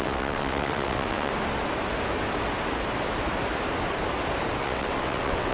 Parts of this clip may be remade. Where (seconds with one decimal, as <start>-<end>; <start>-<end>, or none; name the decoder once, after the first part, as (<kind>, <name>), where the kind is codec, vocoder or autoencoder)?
0.0-1.3 (vocoder, WaveNeXt); 4.6-5.5